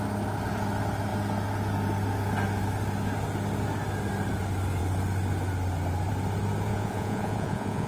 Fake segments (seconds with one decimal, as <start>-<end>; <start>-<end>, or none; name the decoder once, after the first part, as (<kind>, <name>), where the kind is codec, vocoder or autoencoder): 6.7-7.9 (vocoder, Vocos)